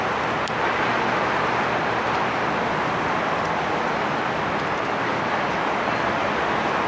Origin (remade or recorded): recorded